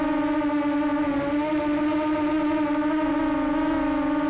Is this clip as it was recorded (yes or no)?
yes